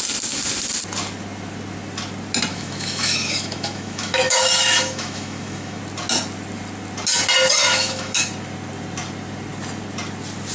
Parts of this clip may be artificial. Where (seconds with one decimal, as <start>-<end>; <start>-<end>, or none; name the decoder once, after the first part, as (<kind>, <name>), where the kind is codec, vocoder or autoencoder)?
2.5-5.8 (autoencoder, DAC-VAE); 7.6-8.3